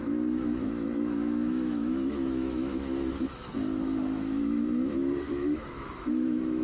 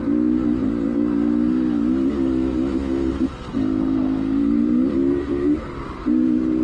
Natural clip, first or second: second